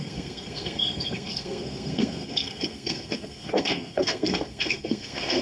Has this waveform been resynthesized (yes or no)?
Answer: yes